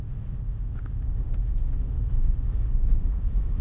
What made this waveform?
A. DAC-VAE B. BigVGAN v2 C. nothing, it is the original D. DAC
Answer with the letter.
A